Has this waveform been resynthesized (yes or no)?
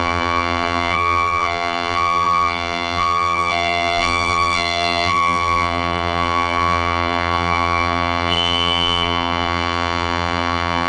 yes